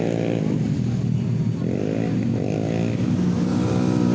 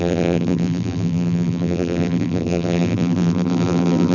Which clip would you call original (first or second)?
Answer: first